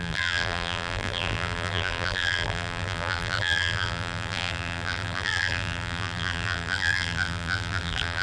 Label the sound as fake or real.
fake